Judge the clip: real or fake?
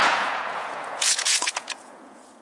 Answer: fake